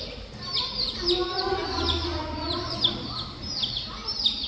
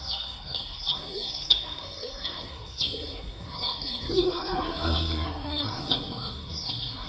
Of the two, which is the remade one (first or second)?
second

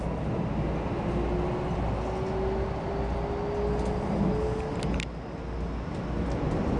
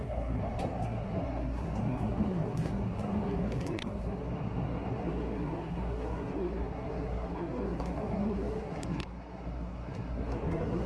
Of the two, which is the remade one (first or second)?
second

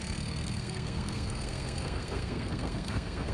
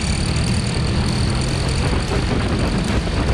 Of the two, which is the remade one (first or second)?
first